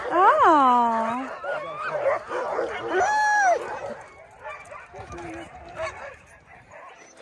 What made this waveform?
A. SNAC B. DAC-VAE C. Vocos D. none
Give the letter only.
D